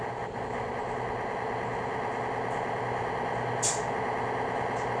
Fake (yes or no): no